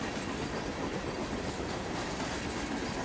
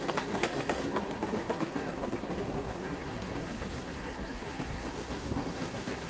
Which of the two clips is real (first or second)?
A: first